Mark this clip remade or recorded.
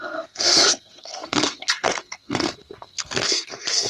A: remade